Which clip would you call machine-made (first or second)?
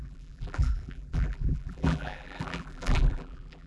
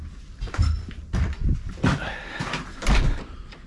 first